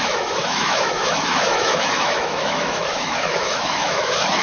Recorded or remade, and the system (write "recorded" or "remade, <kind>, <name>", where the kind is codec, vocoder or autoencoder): remade, autoencoder, DAC-VAE